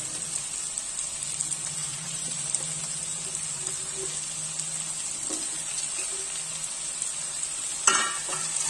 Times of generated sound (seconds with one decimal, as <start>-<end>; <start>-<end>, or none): 1.8-2.4